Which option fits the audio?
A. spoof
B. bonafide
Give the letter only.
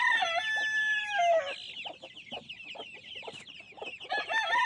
B